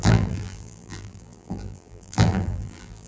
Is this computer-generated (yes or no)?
yes